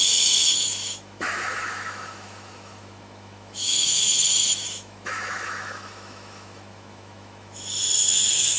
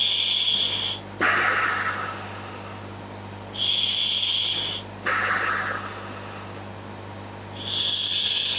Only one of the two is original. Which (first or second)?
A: second